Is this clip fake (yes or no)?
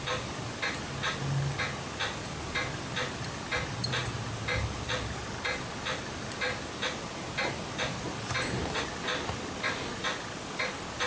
no